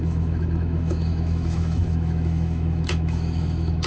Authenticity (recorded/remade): remade